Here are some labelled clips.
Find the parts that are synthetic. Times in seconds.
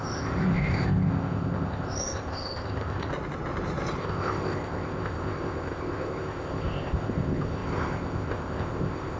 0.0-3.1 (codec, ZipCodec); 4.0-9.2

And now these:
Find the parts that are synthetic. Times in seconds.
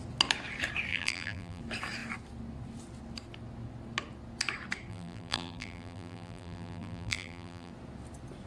0.9-1.6 (vocoder, BigVGAN v2); 4.9-7.7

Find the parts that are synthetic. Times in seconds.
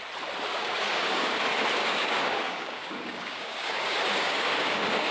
0.5-1.4 (codec, DAC); 1.8-5.1